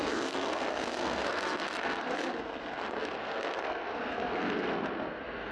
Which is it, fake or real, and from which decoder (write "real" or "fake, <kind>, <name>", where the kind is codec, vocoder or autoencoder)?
fake, codec, SNAC